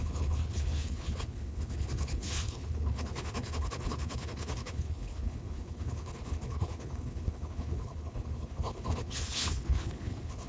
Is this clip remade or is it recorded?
remade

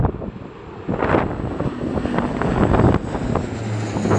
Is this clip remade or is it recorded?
recorded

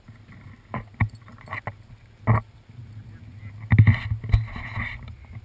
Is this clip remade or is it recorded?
recorded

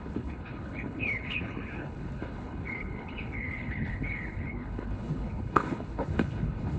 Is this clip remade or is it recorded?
remade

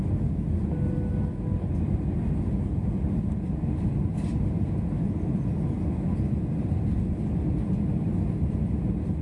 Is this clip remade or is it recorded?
recorded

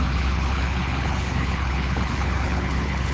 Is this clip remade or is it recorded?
remade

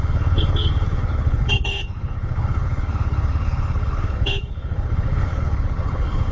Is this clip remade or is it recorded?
remade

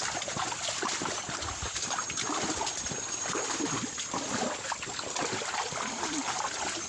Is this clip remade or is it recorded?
recorded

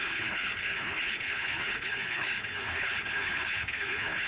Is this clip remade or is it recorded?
remade